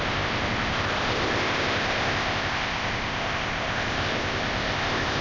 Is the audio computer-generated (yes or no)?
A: yes